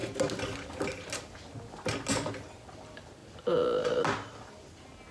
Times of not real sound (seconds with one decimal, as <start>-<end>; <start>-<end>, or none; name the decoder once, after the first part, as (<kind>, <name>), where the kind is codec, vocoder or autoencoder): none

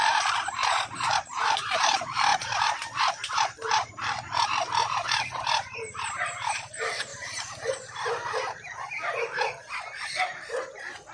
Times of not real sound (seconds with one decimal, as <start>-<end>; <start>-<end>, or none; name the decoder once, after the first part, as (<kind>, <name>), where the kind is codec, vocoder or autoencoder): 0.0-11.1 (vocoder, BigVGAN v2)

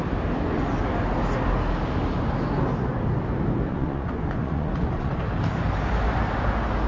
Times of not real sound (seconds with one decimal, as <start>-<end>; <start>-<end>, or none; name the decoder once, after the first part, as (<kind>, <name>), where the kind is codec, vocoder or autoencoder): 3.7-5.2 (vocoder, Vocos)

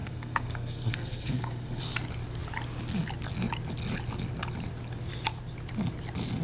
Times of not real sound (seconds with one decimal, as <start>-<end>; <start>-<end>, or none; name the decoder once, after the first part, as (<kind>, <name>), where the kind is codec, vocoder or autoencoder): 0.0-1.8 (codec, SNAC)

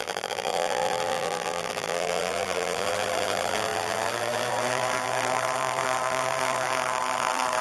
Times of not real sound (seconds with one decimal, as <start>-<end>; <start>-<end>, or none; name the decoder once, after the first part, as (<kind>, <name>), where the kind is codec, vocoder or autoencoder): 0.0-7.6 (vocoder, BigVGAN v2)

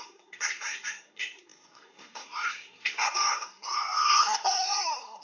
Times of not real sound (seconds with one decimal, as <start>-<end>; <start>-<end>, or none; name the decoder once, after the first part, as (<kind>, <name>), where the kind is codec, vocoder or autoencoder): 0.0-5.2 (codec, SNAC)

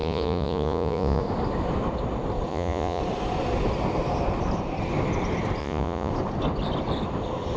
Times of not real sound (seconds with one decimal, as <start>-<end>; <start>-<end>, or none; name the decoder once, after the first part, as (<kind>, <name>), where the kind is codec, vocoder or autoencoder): 0.0-1.2 (vocoder, Vocos); 2.5-3.0; 5.6-6.1